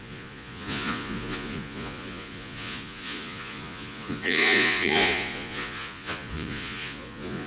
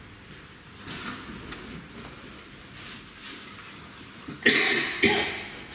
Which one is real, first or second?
second